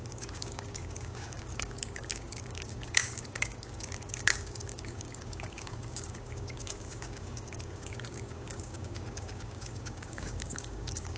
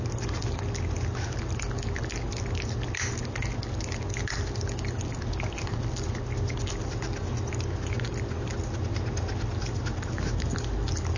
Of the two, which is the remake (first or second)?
first